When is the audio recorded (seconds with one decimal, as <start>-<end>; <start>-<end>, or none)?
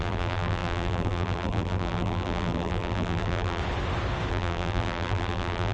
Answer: 3.6-4.3